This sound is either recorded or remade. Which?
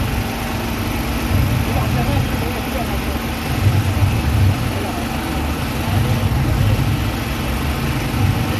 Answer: recorded